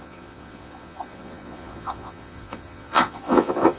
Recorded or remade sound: remade